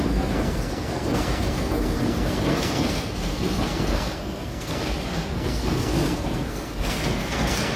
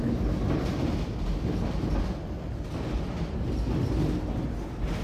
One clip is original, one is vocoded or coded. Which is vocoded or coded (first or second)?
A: first